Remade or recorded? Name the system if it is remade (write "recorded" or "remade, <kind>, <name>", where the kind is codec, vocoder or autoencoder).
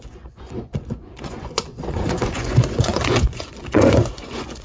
remade, vocoder, Vocos